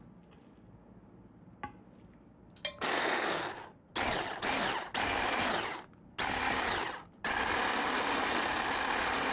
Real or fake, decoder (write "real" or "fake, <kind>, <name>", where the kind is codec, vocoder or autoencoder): real